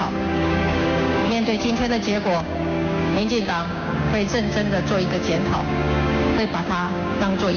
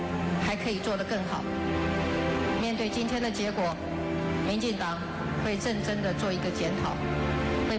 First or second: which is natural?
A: second